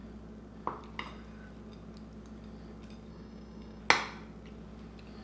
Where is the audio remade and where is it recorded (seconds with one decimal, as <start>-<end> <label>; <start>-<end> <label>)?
0.0-3.1 recorded; 3.1-3.8 remade; 3.8-5.2 recorded